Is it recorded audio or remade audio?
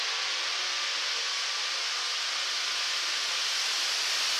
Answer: recorded